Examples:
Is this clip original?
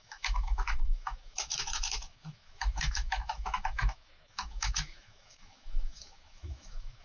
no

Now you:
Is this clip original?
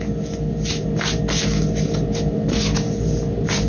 yes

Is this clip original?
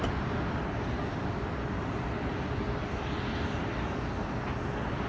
yes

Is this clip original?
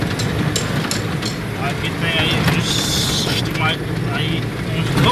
yes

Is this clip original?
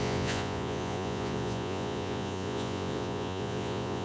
no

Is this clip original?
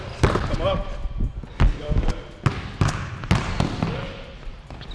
yes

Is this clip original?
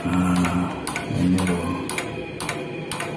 yes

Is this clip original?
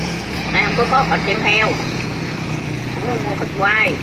no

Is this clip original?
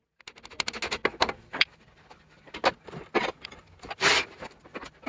yes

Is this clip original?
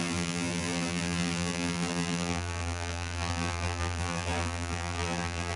no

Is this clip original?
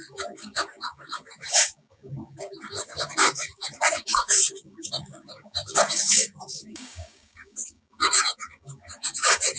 no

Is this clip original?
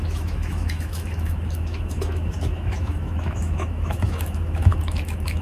no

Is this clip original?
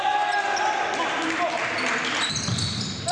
yes